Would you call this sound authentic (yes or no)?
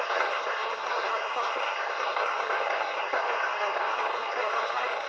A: no